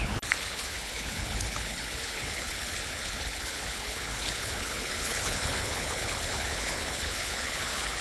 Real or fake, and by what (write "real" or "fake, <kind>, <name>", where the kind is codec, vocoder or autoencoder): fake, codec, HILCodec